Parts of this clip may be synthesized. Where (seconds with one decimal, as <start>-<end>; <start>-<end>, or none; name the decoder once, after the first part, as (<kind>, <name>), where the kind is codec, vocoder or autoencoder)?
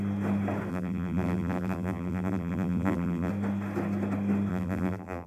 0.7-3.3 (vocoder, BigVGAN v2); 4.5-5.3